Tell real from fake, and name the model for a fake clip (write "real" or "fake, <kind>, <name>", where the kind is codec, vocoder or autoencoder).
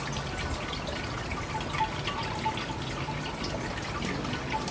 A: real